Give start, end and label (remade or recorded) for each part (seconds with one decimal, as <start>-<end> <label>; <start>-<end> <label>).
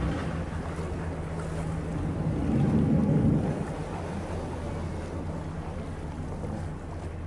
0.0-7.3 recorded